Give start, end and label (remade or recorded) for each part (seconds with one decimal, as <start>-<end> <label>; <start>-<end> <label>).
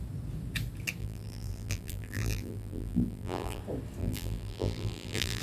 0.0-1.0 recorded; 1.0-3.6 remade; 3.6-4.0 recorded; 4.0-5.4 remade